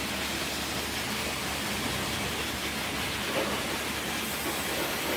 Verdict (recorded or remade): recorded